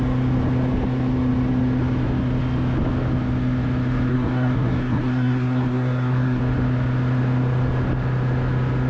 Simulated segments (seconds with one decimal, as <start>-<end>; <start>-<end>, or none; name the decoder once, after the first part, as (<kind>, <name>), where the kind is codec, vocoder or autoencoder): 4.1-6.4 (codec, SNAC)